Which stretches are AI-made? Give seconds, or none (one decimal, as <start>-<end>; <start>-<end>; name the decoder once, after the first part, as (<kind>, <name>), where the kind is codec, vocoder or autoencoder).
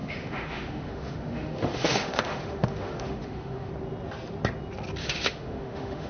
0.0-3.7 (autoencoder, DAC-VAE); 5.0-6.1